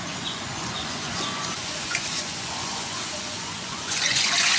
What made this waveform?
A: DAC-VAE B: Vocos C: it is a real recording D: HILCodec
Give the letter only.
B